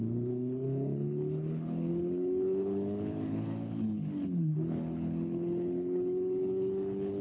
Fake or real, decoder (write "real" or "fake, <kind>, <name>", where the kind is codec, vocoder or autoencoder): fake, codec, HILCodec